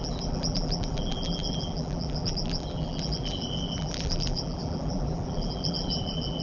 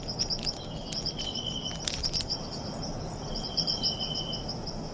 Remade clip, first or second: first